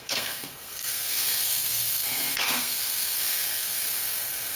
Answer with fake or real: fake